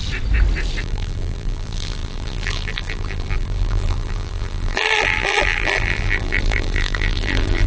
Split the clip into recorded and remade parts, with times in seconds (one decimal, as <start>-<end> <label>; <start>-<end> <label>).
0.0-0.8 recorded; 0.8-7.7 remade